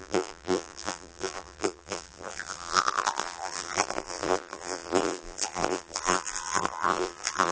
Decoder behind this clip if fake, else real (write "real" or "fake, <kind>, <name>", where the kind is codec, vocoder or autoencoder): fake, vocoder, BigVGAN v2